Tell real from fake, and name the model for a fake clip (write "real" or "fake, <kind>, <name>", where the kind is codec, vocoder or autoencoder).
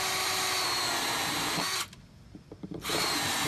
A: real